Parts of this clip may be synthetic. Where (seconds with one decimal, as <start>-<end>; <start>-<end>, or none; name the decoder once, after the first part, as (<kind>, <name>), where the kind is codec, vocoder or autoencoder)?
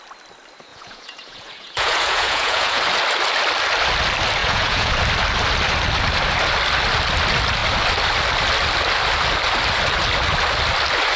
0.7-2.8 (vocoder, Vocos); 4.4-4.9